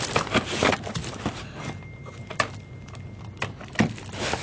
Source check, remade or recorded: recorded